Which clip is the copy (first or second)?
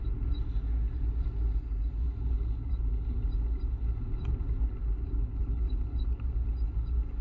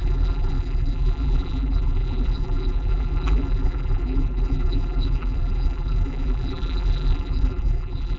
second